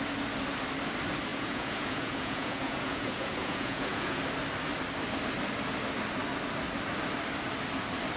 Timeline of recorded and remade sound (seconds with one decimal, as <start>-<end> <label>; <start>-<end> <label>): 0.0-1.3 recorded; 1.3-4.2 remade; 4.2-8.2 recorded